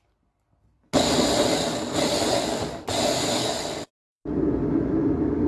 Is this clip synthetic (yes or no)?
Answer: no